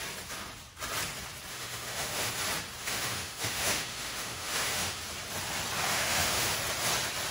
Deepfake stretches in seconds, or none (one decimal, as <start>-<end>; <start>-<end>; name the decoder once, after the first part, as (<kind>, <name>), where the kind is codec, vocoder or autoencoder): 1.5-2.3 (autoencoder, DAC-VAE); 2.8-5.0; 5.9-6.5